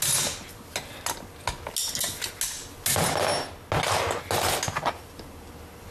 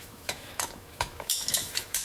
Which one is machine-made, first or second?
second